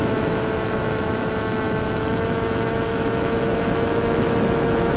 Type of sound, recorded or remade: remade